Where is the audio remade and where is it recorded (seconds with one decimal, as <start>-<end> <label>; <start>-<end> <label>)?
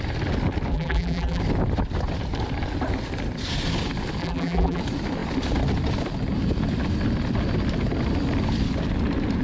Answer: 0.0-0.7 recorded; 0.7-1.4 remade; 1.4-4.2 recorded; 4.2-4.8 remade; 4.8-9.4 recorded